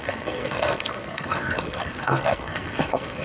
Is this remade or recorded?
remade